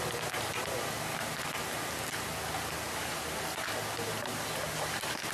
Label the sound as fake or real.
real